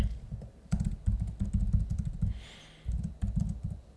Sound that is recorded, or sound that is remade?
recorded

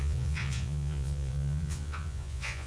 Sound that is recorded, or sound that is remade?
remade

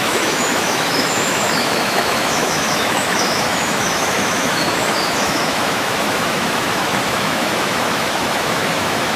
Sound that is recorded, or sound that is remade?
remade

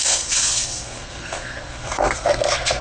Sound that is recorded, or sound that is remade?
remade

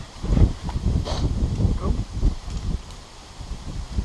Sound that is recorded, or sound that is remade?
remade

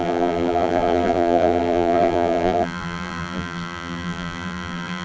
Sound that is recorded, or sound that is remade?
remade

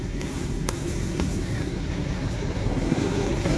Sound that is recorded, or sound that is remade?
remade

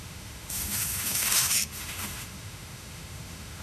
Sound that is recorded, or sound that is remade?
remade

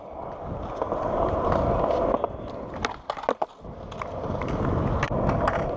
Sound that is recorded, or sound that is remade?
recorded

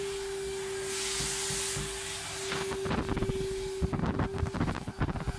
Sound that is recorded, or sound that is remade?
recorded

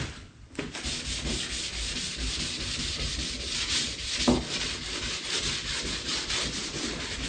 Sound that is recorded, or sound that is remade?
recorded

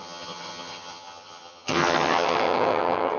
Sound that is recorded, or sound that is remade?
remade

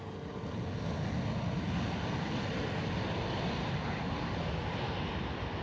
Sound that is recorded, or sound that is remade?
recorded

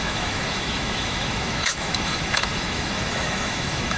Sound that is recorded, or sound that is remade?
remade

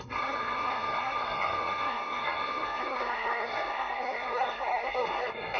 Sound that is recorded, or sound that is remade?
remade